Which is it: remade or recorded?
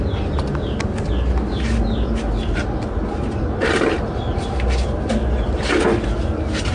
recorded